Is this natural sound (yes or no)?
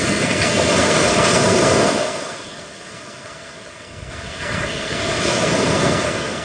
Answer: no